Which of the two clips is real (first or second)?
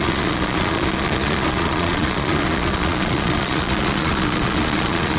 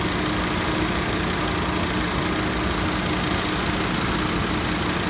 second